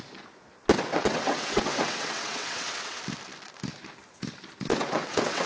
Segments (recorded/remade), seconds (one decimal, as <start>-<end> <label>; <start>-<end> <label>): 0.0-0.9 recorded; 0.9-3.0 remade; 3.0-4.7 recorded; 4.7-5.5 remade